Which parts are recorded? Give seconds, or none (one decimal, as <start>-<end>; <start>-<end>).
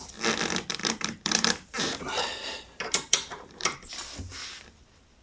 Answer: 0.0-0.8; 3.9-5.2